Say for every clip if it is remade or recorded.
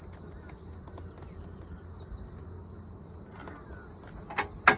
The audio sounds recorded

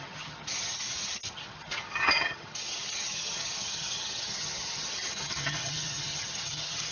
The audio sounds remade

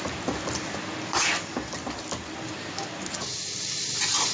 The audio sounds recorded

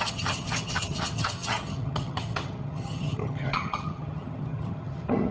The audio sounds remade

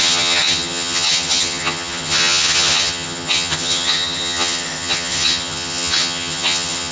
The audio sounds remade